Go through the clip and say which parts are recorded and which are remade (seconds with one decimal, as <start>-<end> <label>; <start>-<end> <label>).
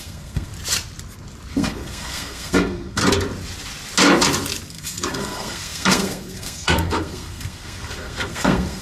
0.0-0.5 remade; 0.5-1.5 recorded; 1.5-3.0 remade; 3.0-4.7 recorded; 4.7-8.8 remade